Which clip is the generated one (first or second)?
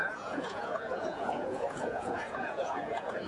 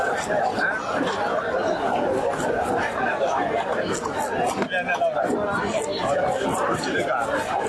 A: first